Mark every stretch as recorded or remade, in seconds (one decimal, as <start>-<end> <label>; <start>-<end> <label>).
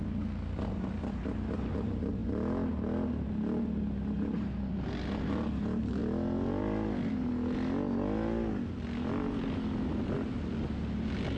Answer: 0.0-11.4 recorded